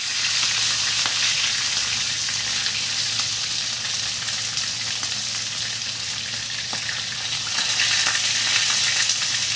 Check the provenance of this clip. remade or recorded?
recorded